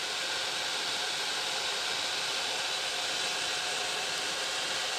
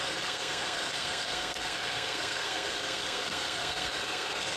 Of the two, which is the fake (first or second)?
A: second